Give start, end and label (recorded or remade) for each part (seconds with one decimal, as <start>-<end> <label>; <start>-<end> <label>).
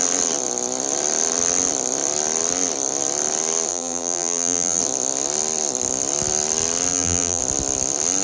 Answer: 0.0-3.7 recorded; 3.7-4.8 remade; 4.8-6.9 recorded; 6.9-7.4 remade; 7.4-8.2 recorded